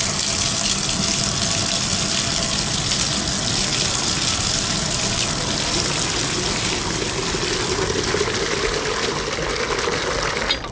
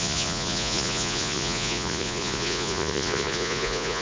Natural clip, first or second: first